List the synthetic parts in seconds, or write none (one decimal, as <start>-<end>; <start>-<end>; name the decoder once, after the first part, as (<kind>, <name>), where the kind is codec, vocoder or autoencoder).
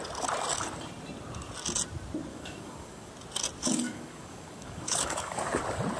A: 2.3-3.1 (codec, DAC); 3.6-5.6